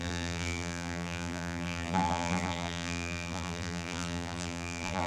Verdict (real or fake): fake